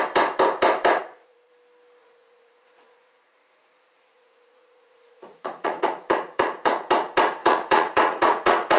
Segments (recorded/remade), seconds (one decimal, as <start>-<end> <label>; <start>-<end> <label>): 0.0-1.0 recorded; 1.0-1.5 remade; 1.5-2.0 recorded; 2.0-6.9 remade; 6.9-7.4 recorded; 7.4-8.8 remade